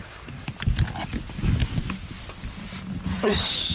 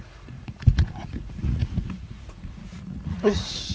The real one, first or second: first